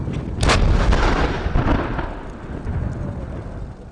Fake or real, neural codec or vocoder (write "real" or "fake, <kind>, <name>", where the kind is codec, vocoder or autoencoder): real